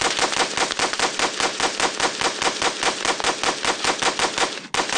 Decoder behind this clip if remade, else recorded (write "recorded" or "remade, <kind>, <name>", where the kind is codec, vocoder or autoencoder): recorded